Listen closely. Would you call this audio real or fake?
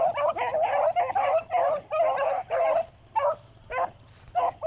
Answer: real